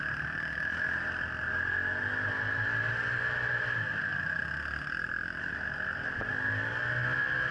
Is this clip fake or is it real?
real